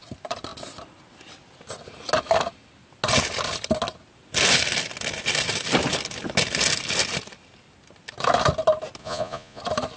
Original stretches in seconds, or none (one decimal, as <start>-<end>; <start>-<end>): 0.0-9.0; 9.6-10.0